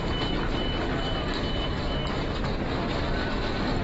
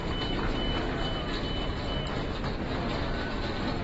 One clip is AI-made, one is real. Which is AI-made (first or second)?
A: first